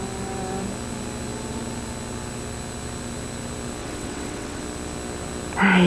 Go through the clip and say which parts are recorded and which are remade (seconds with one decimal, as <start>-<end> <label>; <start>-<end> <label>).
0.0-3.8 recorded; 3.8-4.6 remade; 4.6-5.9 recorded